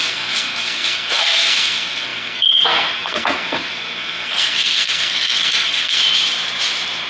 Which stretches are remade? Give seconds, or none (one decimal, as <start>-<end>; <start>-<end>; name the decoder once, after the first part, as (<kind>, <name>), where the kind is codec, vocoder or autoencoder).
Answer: 0.0-6.0 (codec, SNAC)